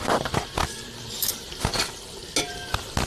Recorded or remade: recorded